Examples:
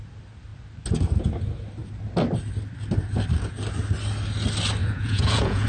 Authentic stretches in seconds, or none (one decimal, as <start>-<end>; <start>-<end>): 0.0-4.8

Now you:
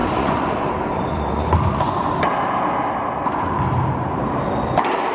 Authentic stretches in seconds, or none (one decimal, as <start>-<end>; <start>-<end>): 0.7-1.1; 2.1-5.1

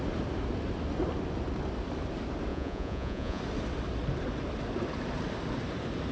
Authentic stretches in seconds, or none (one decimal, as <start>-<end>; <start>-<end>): 0.0-2.5; 3.4-6.1

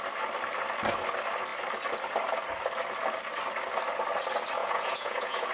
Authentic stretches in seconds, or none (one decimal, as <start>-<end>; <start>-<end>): 0.0-4.6

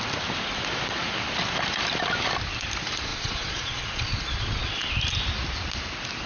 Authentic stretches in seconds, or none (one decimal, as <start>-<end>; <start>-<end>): 0.0-3.1; 4.8-6.3

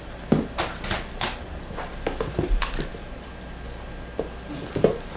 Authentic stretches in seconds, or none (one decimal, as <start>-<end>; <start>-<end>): 0.0-5.2

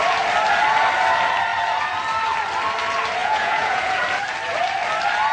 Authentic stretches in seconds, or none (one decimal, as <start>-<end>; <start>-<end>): 0.0-3.2; 3.9-5.3

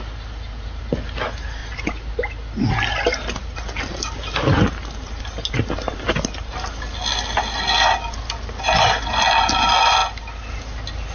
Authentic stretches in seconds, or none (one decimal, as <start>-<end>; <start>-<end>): 0.0-11.1